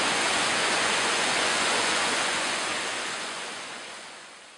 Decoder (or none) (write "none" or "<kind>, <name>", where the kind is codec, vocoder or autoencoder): vocoder, Vocos